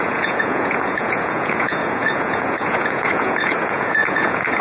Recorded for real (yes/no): no